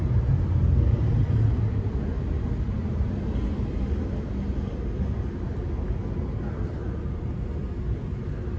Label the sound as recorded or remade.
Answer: recorded